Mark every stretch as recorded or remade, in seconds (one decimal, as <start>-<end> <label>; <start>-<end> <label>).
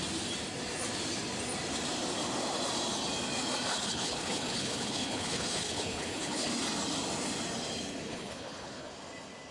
0.0-3.7 recorded; 3.7-6.5 remade; 6.5-8.1 recorded; 8.1-8.9 remade; 8.9-9.5 recorded